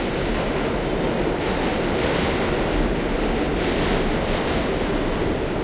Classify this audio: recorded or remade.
recorded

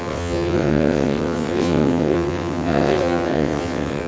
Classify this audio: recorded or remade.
remade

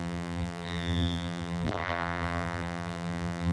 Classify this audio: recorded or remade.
remade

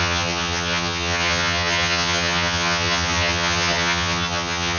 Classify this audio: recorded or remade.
remade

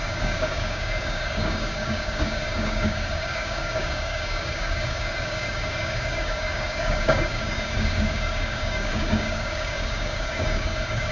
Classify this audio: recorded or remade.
remade